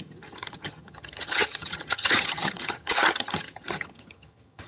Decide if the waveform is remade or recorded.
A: remade